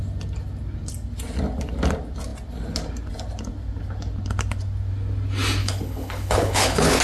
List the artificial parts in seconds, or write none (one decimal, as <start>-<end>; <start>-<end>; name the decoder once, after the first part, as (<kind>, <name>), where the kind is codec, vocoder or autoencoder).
5.6-7.0 (codec, HILCodec)

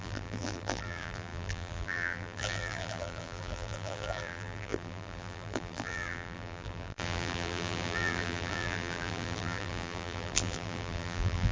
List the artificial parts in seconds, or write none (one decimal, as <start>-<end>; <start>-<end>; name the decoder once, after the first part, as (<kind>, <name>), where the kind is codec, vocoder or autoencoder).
0.0-11.5 (vocoder, BigVGAN v2)

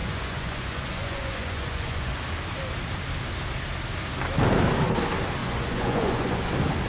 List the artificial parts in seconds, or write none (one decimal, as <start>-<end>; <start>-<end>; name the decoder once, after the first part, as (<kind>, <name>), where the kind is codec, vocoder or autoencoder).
0.0-2.2 (vocoder, Vocos); 5.4-6.5

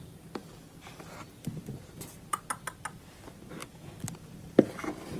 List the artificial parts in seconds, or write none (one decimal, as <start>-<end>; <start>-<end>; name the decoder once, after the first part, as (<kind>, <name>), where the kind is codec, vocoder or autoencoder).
3.6-4.7 (vocoder, BigVGAN v2)